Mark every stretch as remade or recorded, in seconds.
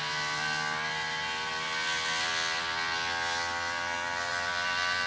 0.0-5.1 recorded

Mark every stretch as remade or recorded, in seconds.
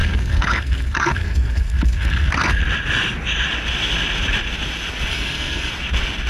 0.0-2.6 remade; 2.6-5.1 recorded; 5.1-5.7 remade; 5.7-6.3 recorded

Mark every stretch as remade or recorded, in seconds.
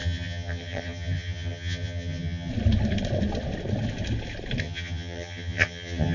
0.0-2.5 remade; 2.5-4.6 recorded; 4.6-6.1 remade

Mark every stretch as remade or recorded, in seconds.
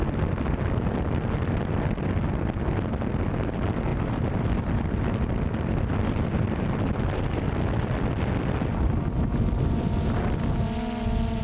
0.0-3.9 recorded; 3.9-4.6 remade; 4.6-11.4 recorded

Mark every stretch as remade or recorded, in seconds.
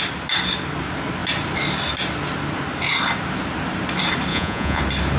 0.0-4.3 recorded; 4.3-4.8 remade; 4.8-5.2 recorded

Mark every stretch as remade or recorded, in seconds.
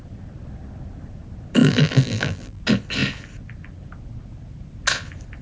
0.0-1.6 recorded; 1.6-2.6 remade; 2.6-5.4 recorded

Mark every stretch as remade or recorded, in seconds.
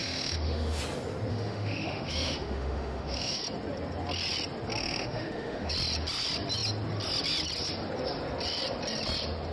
0.0-0.8 remade; 0.8-1.3 recorded; 1.3-3.4 remade; 3.4-4.8 recorded; 4.8-5.7 remade; 5.7-9.5 recorded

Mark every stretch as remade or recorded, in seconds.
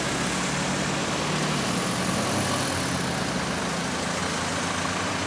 0.0-5.3 recorded